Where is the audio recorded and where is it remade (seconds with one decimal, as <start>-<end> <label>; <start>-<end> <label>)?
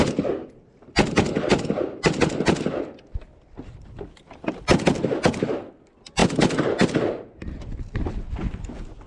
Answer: 0.0-9.1 recorded